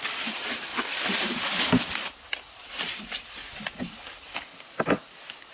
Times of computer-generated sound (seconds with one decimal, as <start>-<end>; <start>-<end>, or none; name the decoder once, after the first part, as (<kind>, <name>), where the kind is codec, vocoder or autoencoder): 0.0-5.5 (vocoder, BigVGAN v2)